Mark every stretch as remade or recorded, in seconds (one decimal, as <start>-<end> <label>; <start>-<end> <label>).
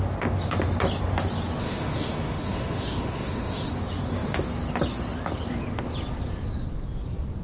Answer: 0.0-1.6 recorded; 1.6-3.7 remade; 3.7-7.4 recorded